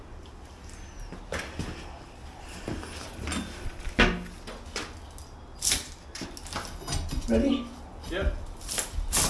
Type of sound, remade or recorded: recorded